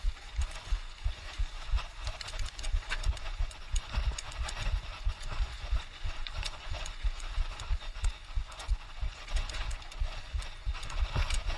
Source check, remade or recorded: remade